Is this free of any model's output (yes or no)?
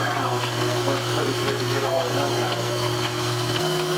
no